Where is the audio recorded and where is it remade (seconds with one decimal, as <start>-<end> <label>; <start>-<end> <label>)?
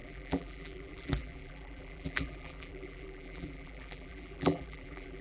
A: 0.0-5.2 remade